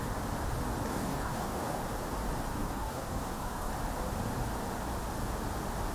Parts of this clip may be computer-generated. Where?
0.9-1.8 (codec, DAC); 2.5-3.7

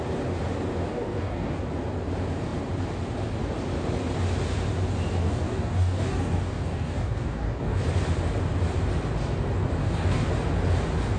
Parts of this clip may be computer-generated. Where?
0.9-1.6 (codec, DAC); 5.2-7.8; 9.8-10.3